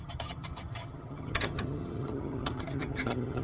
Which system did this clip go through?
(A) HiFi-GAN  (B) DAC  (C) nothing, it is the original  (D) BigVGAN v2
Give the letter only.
A